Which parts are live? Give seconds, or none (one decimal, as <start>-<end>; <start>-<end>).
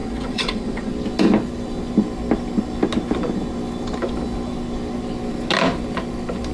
0.9-6.5